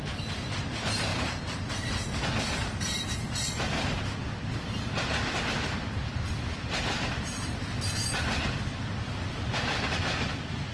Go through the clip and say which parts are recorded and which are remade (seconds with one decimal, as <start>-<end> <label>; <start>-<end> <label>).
0.0-10.7 remade